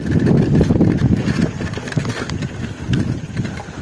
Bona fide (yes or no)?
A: yes